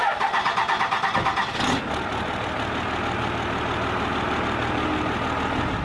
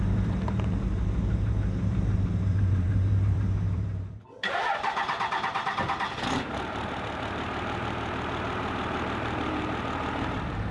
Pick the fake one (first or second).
second